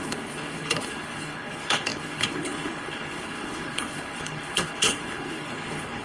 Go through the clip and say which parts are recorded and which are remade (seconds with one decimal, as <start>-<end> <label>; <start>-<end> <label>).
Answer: 0.0-6.0 remade